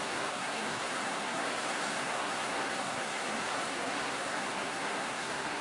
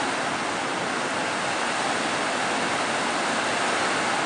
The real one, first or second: second